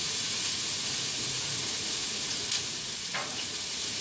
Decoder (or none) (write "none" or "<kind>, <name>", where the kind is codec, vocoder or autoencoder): vocoder, Vocos